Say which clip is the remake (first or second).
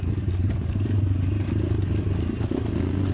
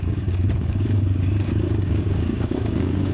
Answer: second